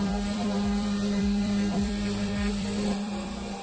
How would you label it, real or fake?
fake